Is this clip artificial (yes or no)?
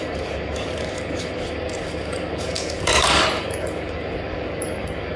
yes